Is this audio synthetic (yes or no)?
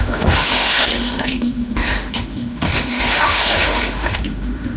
yes